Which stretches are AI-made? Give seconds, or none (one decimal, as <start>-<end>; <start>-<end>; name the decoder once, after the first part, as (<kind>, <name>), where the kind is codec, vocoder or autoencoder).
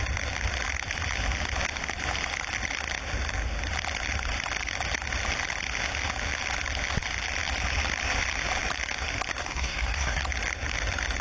9.4-10.2 (codec, SNAC)